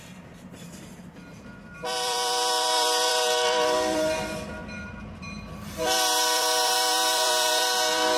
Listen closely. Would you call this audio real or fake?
fake